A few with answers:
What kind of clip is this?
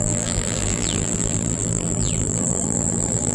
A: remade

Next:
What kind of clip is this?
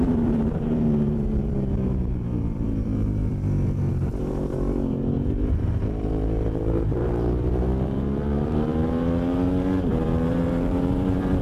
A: remade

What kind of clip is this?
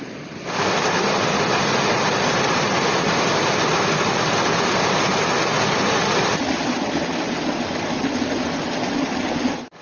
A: recorded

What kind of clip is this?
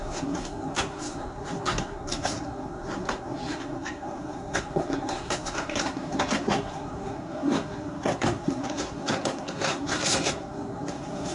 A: remade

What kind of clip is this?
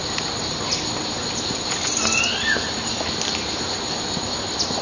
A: recorded